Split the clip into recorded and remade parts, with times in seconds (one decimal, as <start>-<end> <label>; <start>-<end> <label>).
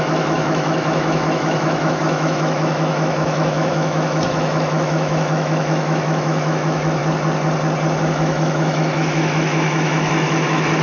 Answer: 0.0-7.0 remade; 7.0-8.0 recorded; 8.0-10.8 remade